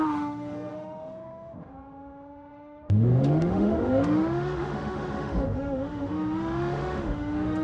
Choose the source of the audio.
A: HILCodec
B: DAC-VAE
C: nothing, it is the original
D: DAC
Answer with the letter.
B